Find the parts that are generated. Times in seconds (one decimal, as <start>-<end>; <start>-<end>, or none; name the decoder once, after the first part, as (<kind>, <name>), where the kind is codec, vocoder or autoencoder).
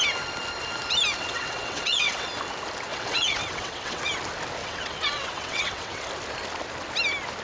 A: 1.2-2.3 (vocoder, WaveNeXt); 2.9-4.0; 4.6-6.1